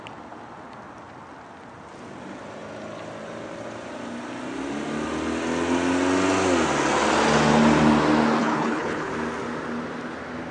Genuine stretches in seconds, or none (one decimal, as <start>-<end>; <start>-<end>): 0.0-8.4; 9.1-10.5